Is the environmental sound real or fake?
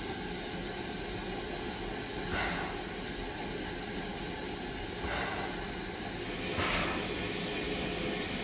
real